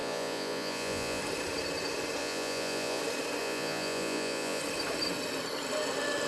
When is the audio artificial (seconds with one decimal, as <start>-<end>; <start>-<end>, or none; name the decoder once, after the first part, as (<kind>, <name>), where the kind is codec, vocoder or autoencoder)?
0.0-1.2 (vocoder, Vocos); 2.2-3.0; 3.4-4.6